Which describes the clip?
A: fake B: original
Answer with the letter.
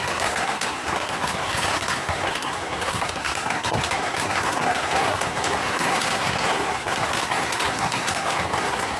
A